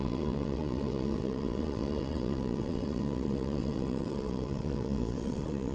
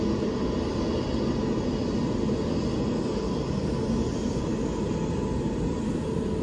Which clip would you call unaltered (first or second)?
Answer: second